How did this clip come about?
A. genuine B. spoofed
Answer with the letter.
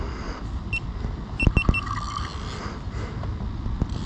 A